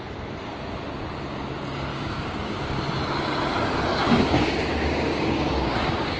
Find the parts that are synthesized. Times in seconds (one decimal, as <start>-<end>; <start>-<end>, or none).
1.9-2.8; 4.0-6.2